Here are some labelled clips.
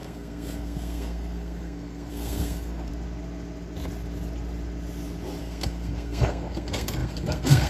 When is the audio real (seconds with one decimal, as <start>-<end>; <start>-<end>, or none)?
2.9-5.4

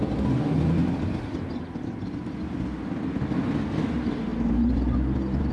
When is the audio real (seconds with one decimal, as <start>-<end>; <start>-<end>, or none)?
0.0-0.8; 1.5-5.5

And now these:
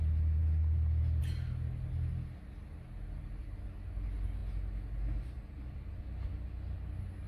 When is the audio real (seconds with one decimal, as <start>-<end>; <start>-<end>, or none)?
0.0-7.3